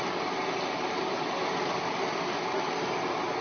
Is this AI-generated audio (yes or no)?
no